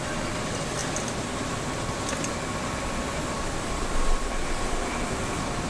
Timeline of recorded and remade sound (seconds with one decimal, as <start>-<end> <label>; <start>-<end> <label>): 0.0-5.7 recorded